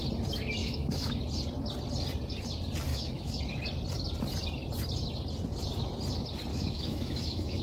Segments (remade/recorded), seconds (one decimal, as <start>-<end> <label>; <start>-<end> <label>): 0.0-0.6 recorded; 0.6-1.2 remade; 1.2-2.9 recorded; 2.9-3.4 remade; 3.4-6.5 recorded; 6.5-7.6 remade